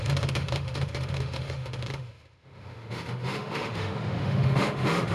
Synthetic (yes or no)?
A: yes